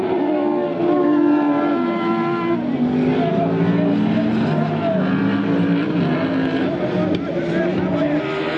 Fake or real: real